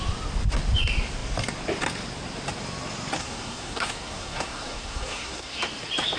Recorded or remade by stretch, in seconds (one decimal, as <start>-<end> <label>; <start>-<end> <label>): 0.0-3.2 recorded; 3.2-5.6 remade; 5.6-6.2 recorded